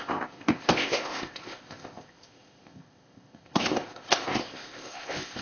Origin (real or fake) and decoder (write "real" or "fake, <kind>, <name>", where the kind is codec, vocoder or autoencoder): fake, codec, ZipCodec